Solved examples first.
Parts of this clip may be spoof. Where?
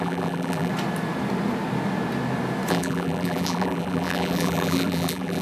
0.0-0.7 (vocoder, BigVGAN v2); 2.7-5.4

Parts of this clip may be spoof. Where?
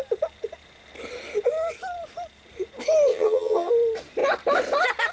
3.1-3.7 (vocoder, HiFi-GAN)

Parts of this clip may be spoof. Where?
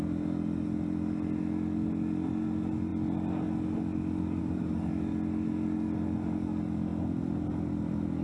none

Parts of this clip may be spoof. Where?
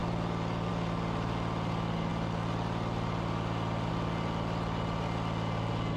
none